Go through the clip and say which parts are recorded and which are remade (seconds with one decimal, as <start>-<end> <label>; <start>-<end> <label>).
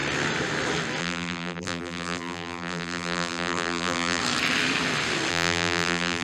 0.0-1.0 recorded; 1.0-4.2 remade; 4.2-5.3 recorded; 5.3-6.2 remade